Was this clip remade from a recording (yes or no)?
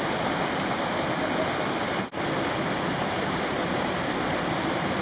no